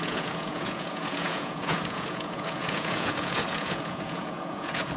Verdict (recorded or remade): remade